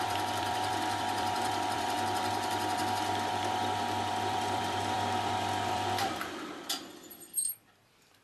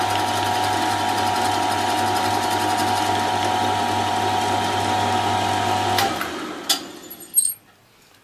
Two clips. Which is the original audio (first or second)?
second